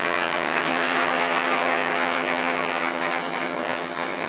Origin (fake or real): fake